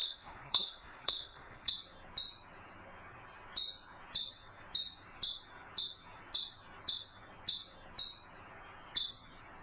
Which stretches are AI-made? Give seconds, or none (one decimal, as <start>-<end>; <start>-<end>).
0.0-1.7

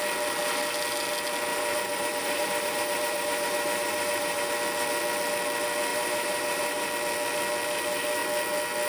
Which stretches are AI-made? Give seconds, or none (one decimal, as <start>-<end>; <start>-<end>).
1.5-4.5; 5.9-6.9

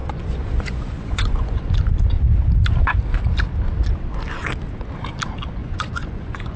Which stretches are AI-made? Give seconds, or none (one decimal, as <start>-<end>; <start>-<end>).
0.0-1.7; 5.6-6.6

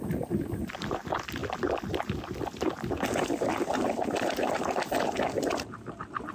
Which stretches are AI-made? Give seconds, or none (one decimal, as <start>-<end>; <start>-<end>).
none

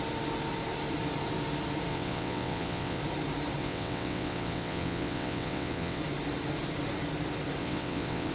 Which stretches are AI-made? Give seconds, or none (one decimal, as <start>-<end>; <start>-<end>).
1.9-3.0; 3.6-6.0; 7.6-8.3